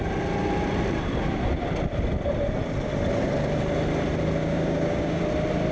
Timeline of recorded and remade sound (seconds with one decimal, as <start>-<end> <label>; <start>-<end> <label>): 0.0-4.4 recorded; 4.4-5.2 remade; 5.2-5.7 recorded